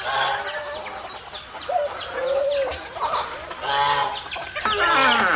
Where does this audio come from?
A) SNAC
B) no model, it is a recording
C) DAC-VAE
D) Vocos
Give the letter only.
B